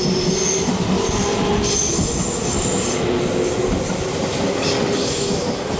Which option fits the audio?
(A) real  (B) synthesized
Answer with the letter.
A